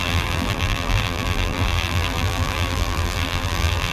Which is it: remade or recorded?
remade